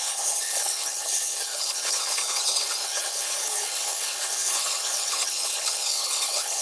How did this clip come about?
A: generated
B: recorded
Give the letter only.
A